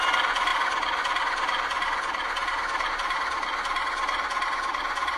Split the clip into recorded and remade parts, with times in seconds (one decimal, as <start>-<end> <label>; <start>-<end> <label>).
0.0-5.2 recorded